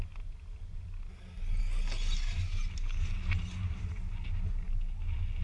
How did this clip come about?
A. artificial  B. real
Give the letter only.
B